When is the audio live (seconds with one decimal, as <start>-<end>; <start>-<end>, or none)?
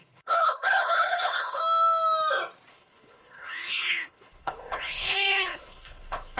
1.6-2.7